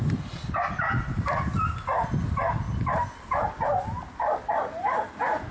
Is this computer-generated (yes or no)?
no